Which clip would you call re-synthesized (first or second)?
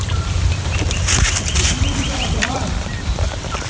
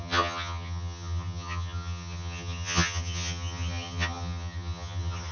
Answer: second